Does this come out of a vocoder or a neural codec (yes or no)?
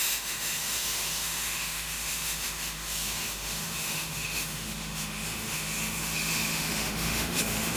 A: yes